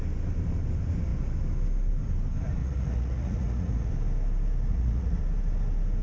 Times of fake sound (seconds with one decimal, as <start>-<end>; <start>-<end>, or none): 2.6-3.9; 4.7-5.2